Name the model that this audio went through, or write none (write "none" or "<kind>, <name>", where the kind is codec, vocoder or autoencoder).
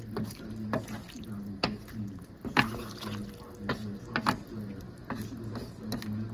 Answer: none